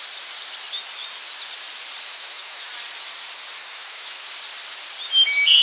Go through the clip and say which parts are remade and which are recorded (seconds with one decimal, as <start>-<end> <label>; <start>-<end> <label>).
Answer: 0.0-2.1 recorded; 2.1-2.7 remade; 2.7-3.6 recorded; 3.6-4.2 remade; 4.2-5.6 recorded